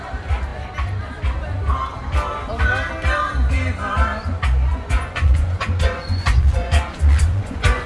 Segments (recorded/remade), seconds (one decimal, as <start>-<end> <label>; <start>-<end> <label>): 0.0-4.7 recorded; 4.7-7.9 remade